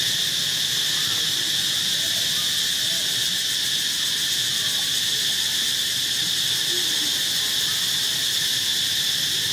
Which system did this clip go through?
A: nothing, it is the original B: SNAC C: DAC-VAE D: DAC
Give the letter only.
A